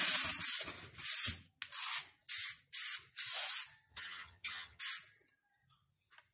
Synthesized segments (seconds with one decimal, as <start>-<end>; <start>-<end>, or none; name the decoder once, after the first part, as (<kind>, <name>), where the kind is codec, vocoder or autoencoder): 3.9-4.8 (vocoder, HiFi-GAN)